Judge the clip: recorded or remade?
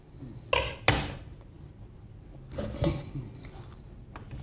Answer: recorded